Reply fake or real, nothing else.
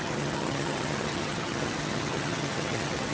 fake